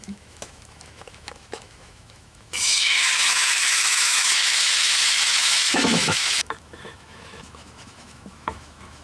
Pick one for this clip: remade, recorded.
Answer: remade